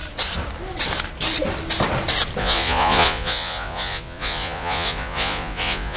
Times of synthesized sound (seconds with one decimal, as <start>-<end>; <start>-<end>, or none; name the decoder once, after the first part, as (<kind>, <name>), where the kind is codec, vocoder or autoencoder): 2.4-6.0 (vocoder, Vocos)